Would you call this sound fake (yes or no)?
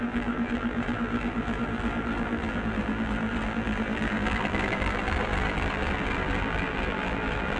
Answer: yes